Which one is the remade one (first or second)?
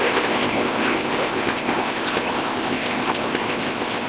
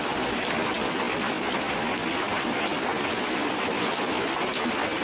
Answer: first